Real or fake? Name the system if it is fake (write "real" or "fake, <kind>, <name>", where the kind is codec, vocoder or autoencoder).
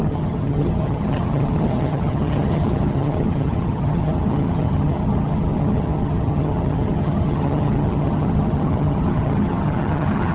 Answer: fake, vocoder, HiFi-GAN